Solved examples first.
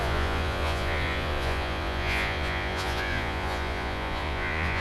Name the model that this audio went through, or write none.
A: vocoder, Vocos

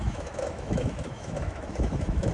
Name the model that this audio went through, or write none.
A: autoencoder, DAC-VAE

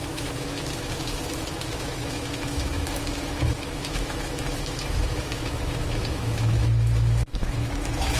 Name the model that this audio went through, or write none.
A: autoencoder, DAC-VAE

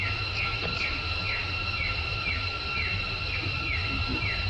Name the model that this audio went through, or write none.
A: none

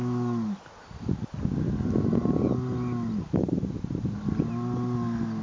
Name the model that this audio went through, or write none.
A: none